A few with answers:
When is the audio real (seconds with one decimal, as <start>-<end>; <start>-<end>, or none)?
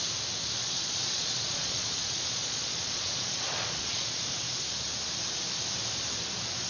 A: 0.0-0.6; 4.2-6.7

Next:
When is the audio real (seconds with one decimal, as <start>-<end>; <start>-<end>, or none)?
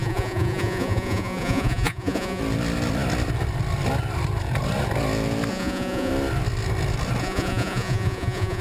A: 2.4-5.5; 6.1-7.2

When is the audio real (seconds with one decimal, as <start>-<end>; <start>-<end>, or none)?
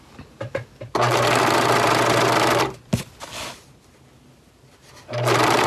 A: 0.0-5.7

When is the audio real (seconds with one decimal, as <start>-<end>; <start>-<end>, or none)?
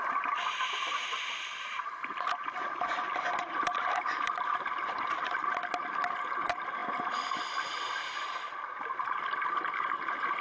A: 0.0-10.4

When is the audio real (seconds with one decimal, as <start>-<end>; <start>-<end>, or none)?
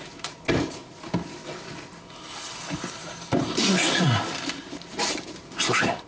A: 0.0-6.1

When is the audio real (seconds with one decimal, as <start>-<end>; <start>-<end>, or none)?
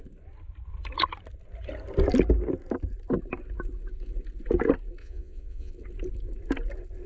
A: 0.0-5.0; 5.7-7.1